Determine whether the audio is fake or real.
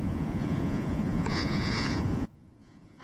fake